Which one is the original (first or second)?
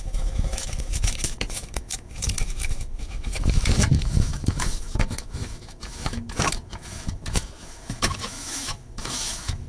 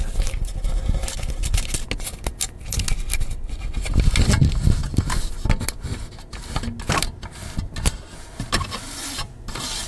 second